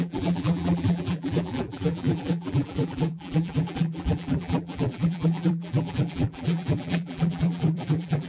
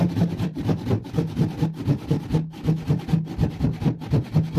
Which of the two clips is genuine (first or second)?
second